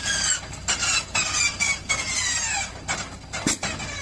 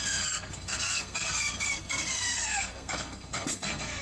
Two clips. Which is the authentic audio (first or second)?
first